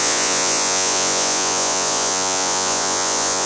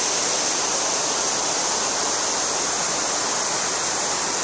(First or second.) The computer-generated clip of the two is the first